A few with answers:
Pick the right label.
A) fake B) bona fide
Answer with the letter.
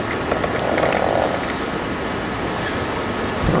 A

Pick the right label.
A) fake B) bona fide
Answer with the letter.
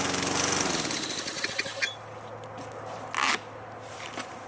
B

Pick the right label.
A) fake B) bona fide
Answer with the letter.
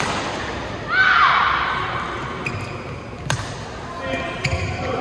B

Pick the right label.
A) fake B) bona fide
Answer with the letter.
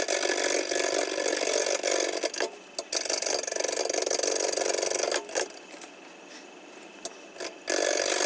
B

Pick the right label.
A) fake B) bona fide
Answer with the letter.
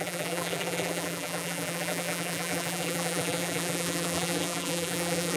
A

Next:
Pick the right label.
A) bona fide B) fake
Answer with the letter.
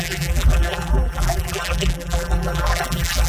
B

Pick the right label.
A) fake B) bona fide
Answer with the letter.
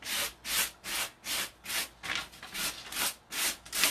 B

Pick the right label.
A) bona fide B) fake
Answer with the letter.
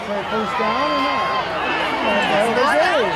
A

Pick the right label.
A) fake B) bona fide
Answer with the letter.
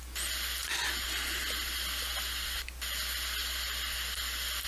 B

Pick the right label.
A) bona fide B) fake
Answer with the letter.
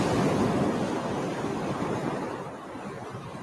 A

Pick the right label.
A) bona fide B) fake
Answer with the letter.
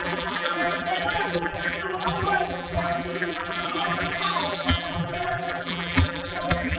B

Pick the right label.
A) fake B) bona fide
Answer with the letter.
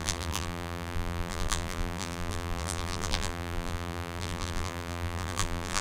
A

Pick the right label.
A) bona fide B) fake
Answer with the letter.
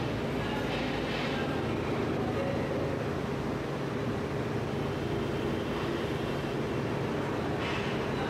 A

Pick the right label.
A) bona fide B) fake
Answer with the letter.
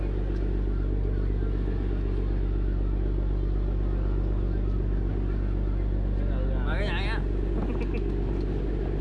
A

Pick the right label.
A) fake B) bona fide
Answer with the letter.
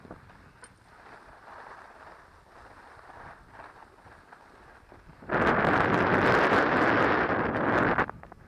B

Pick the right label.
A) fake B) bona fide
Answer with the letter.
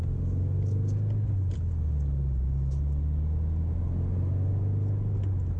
B